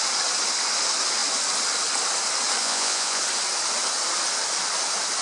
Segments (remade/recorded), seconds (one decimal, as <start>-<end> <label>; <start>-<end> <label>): 0.0-2.6 recorded; 2.6-3.2 remade; 3.2-5.2 recorded